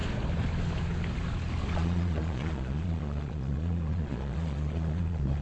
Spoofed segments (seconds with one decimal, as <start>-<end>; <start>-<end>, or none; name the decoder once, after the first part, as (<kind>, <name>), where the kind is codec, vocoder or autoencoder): 1.7-5.4 (vocoder, Vocos)